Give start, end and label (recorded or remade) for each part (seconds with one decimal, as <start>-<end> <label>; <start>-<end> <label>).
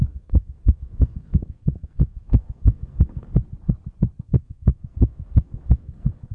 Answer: 0.0-3.3 remade; 3.3-4.2 recorded; 4.2-6.3 remade